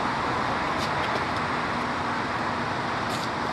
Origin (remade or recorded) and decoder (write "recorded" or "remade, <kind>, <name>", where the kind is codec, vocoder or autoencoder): recorded